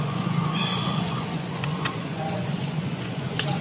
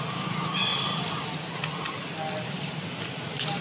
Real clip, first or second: second